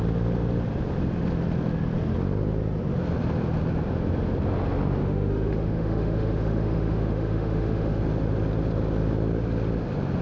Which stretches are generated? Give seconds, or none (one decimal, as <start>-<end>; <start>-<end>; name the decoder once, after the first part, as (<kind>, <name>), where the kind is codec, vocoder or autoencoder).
5.0-8.0 (autoencoder, DAC-VAE)

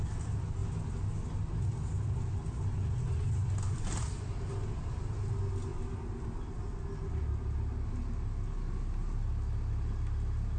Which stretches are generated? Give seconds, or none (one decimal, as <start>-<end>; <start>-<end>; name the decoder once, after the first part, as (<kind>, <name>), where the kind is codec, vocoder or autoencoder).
none